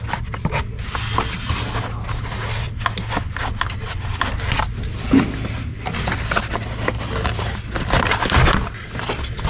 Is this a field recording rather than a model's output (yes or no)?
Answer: yes